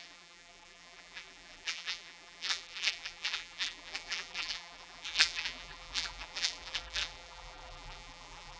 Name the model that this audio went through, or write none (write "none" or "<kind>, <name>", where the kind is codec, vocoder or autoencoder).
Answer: vocoder, BigVGAN v2